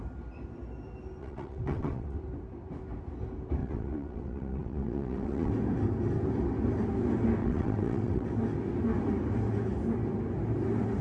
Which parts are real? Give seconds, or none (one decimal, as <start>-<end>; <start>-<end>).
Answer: 0.0-1.2; 2.2-3.6; 5.5-7.4; 8.3-11.0